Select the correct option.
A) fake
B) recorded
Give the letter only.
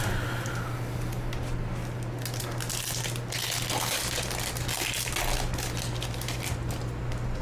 B